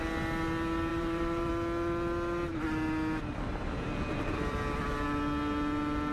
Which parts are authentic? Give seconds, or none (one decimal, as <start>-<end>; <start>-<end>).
0.0-0.9; 1.5-6.1